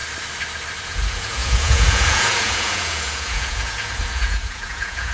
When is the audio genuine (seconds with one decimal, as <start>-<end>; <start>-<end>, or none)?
0.0-0.8